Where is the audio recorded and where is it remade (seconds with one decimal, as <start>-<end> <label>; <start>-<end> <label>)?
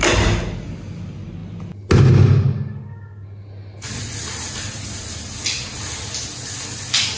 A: 0.0-7.2 recorded